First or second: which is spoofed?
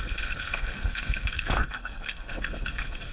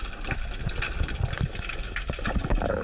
first